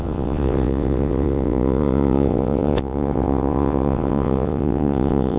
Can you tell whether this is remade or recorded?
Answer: remade